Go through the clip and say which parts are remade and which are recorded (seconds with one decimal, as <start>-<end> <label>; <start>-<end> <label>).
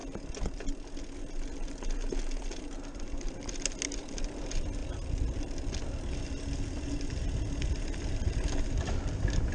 0.0-9.5 recorded